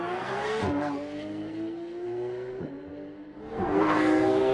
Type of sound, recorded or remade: remade